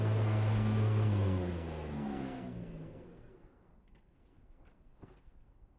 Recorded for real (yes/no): no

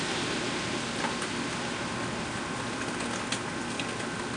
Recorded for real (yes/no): yes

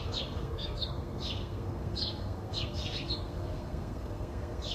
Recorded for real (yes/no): no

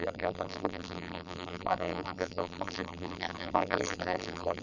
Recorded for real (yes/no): no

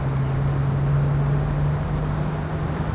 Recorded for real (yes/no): yes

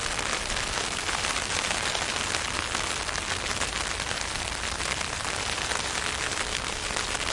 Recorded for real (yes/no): yes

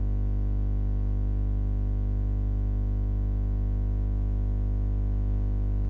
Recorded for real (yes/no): yes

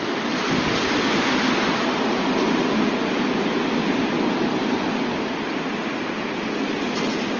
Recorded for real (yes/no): yes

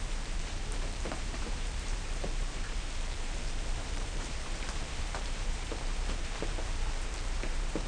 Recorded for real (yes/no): no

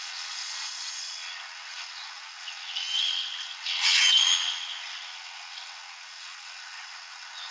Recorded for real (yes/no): no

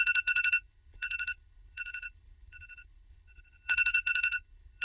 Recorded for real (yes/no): no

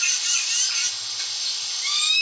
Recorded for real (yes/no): yes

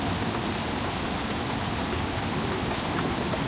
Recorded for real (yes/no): yes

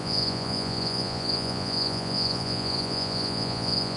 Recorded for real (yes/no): no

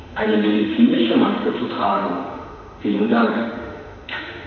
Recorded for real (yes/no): no